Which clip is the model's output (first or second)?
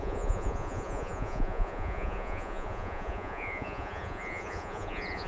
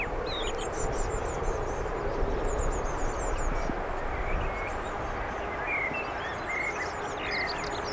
first